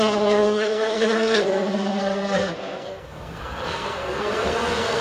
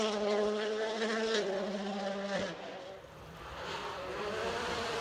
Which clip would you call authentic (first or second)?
second